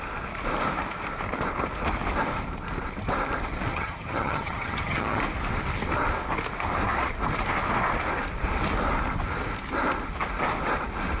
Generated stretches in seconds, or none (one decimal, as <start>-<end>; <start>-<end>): 3.7-5.2